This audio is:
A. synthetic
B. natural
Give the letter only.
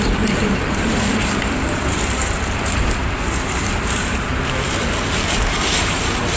A